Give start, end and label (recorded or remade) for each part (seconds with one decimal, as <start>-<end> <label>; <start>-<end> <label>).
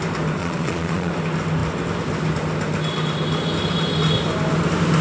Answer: 0.0-0.4 recorded; 0.4-1.1 remade; 1.1-5.0 recorded